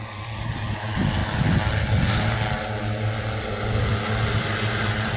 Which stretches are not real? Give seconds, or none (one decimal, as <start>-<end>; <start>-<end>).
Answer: none

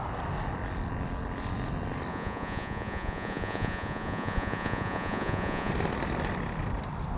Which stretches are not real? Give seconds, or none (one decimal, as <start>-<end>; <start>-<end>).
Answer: 2.1-5.7